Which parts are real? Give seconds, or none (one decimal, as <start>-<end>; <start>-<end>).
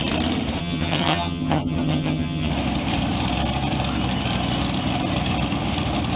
0.0-0.6; 2.5-6.2